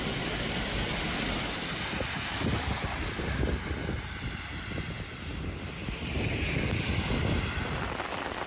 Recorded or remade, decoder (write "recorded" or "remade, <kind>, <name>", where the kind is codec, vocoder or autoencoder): recorded